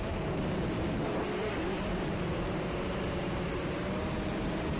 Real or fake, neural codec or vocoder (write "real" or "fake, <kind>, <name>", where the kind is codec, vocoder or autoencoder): fake, vocoder, BigVGAN v2